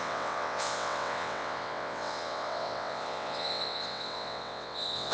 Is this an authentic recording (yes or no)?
no